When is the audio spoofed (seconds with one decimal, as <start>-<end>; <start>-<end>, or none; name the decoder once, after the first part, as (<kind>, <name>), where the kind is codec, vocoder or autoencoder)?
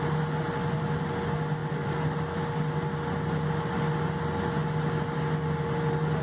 none